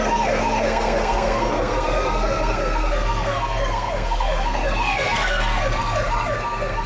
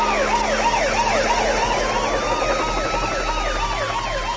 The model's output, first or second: first